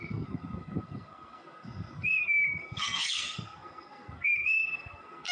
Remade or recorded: remade